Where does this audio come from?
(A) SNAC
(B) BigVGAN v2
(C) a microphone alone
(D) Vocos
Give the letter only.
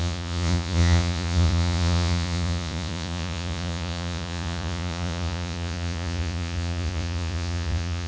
D